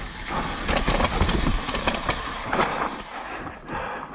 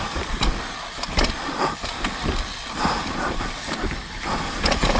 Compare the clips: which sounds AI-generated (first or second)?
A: second